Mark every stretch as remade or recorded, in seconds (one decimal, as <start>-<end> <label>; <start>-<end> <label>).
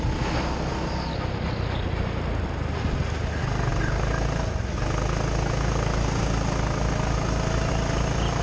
0.0-8.4 recorded